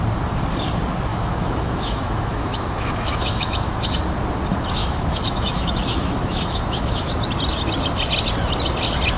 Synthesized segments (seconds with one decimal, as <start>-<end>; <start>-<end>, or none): 1.1-4.0; 4.8-7.1